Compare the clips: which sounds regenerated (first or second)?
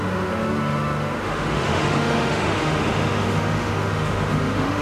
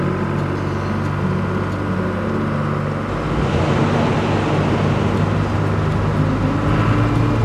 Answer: first